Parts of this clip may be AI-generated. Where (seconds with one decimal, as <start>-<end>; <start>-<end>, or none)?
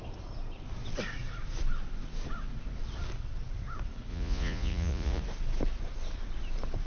4.1-5.2